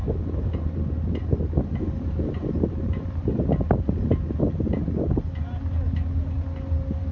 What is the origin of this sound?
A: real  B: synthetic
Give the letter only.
A